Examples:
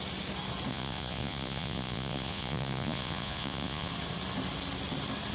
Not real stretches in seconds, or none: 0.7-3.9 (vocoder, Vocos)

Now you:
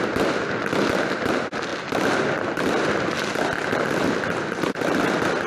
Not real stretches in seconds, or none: 1.7-5.0 (vocoder, BigVGAN v2)

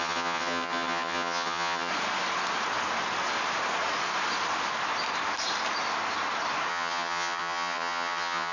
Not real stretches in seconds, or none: 0.0-1.9 (vocoder, HiFi-GAN); 6.7-8.5

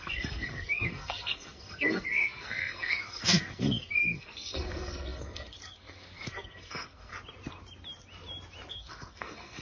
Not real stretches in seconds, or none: 0.0-7.1 (codec, SNAC); 8.7-9.6

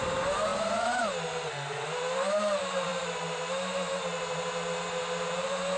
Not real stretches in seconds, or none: 0.0-5.8 (vocoder, BigVGAN v2)

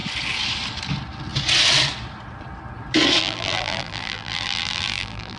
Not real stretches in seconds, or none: 3.2-5.4 (vocoder, BigVGAN v2)